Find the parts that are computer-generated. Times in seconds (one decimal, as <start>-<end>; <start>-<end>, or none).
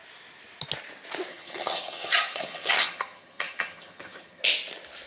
1.3-4.4